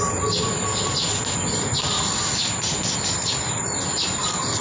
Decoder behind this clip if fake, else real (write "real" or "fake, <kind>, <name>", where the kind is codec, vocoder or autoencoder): real